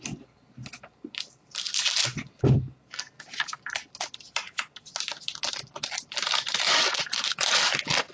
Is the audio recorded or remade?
recorded